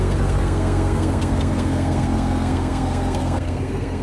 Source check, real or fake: fake